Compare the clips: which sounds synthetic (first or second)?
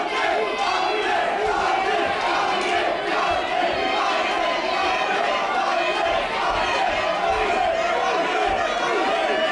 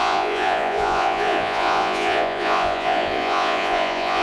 second